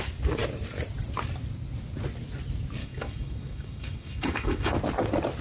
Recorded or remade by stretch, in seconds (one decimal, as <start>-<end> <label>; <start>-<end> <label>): 0.0-2.8 recorded; 2.8-4.7 remade; 4.7-5.4 recorded